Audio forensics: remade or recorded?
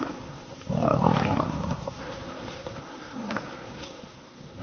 remade